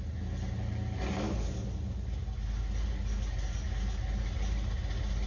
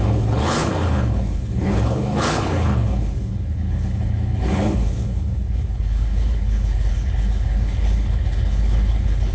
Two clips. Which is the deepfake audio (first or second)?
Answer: second